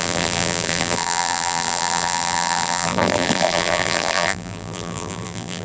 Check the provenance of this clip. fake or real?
fake